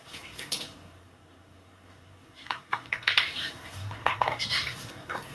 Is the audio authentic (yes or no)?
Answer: no